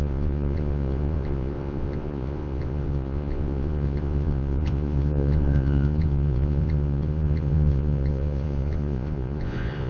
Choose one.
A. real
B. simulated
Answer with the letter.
B